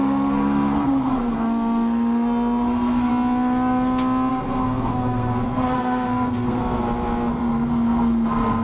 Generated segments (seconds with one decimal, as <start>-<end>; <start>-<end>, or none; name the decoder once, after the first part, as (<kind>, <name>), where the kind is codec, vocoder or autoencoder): 0.0-3.1 (codec, SNAC); 4.3-6.6; 7.4-8.6